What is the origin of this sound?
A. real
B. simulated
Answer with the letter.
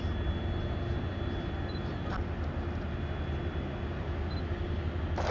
A